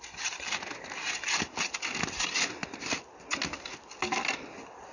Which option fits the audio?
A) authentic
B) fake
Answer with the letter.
A